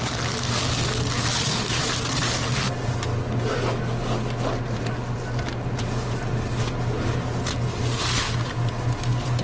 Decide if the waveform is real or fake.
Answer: real